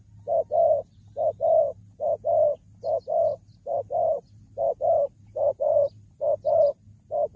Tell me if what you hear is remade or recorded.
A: recorded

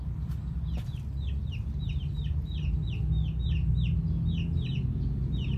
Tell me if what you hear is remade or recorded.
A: recorded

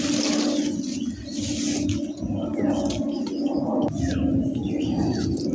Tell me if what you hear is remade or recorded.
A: recorded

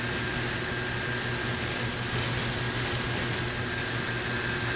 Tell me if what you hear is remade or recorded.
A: recorded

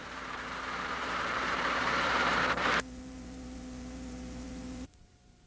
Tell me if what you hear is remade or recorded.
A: remade